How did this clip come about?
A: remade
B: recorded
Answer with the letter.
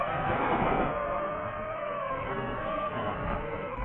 A